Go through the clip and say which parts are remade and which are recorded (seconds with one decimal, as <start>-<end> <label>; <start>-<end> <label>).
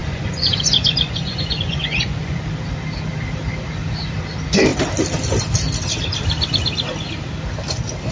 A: 0.0-2.4 remade; 2.4-8.1 recorded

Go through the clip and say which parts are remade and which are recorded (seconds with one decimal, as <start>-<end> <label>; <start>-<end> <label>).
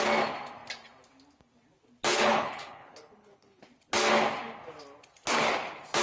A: 0.0-2.1 recorded; 2.1-3.6 remade; 3.6-6.0 recorded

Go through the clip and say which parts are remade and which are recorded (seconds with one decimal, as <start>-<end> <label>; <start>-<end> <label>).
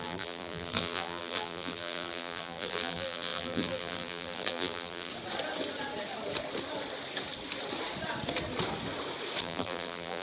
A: 0.0-5.1 remade; 5.1-9.4 recorded; 9.4-10.2 remade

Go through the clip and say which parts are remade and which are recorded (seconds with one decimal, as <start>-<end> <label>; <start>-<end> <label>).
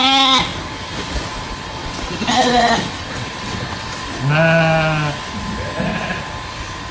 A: 0.0-1.8 recorded; 1.8-4.2 remade; 4.2-6.9 recorded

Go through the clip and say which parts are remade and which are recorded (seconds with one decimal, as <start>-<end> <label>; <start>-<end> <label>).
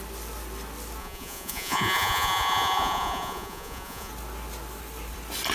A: 0.0-1.0 recorded; 1.0-4.1 remade; 4.1-5.5 recorded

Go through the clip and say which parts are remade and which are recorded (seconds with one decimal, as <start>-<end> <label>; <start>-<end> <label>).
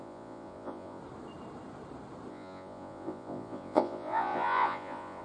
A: 0.0-1.0 remade; 1.0-2.3 recorded; 2.3-5.2 remade